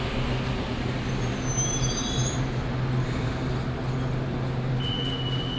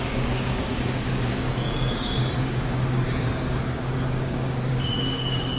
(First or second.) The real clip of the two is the first